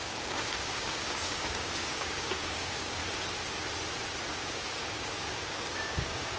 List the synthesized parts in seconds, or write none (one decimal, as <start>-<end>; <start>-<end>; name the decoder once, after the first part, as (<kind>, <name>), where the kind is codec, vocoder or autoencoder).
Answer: 0.0-3.0 (codec, DAC); 4.2-6.4